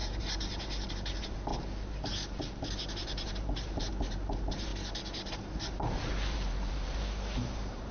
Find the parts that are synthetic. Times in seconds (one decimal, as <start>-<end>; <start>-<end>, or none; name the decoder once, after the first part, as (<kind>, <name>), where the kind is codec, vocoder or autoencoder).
0.0-4.7 (vocoder, BigVGAN v2); 5.3-7.9